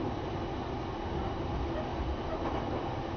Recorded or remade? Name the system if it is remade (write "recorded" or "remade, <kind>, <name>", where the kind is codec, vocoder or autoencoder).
recorded